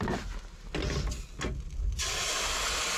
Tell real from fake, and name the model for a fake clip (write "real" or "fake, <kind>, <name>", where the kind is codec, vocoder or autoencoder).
real